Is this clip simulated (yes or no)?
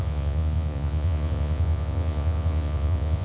yes